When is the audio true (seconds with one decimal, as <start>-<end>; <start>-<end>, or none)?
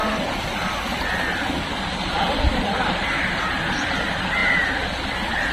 0.0-5.5